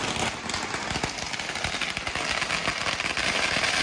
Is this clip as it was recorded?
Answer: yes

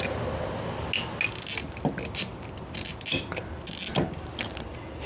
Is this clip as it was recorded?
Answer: yes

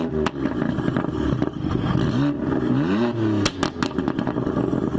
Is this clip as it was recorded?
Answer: yes